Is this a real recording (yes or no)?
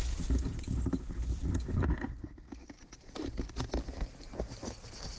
yes